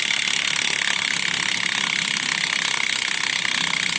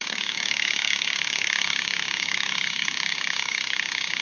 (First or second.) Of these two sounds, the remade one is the second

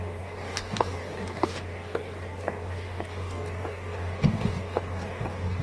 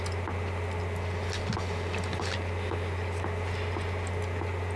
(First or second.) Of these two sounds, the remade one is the first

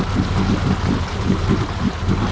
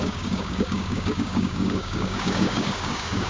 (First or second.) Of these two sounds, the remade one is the second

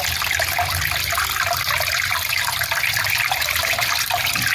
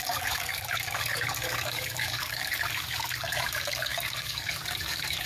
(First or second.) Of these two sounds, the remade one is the second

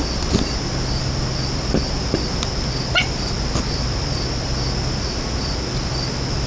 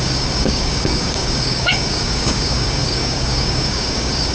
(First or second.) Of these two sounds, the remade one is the second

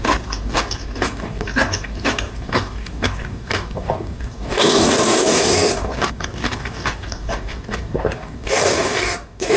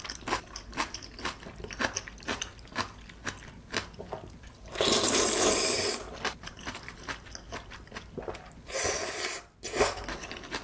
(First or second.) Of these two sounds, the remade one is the first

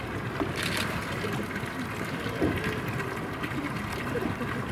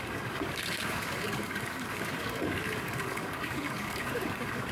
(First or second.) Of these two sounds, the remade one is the second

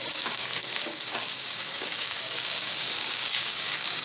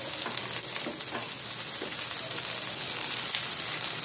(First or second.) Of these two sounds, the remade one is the first